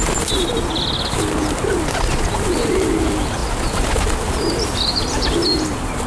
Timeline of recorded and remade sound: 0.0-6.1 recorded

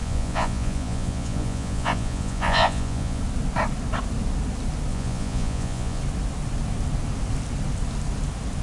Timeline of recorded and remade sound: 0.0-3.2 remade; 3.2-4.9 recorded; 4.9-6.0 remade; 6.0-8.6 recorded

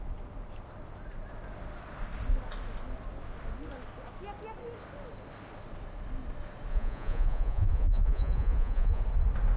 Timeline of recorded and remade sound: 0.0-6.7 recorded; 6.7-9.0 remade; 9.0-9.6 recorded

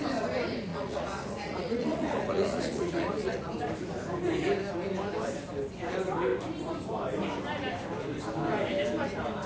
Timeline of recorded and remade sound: 0.0-0.7 recorded; 0.7-3.5 remade; 3.5-9.5 recorded

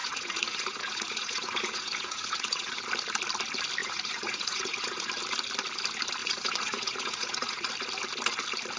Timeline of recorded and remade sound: 0.0-2.8 remade; 2.8-3.8 recorded; 3.8-5.1 remade; 5.1-6.2 recorded; 6.2-7.7 remade; 7.7-8.8 recorded

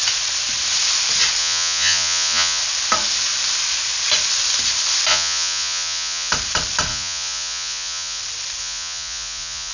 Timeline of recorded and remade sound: 0.0-1.4 recorded; 1.4-2.6 remade; 2.6-5.1 recorded; 5.1-6.3 remade; 6.3-6.9 recorded; 6.9-8.2 remade; 8.2-8.6 recorded; 8.6-9.7 remade

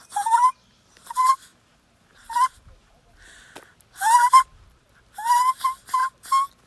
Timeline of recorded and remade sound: 0.0-6.7 recorded

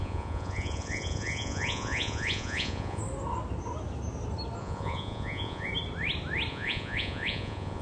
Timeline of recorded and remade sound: 0.0-3.0 remade; 3.0-4.6 recorded; 4.6-5.7 remade; 5.7-6.5 recorded; 6.5-7.8 remade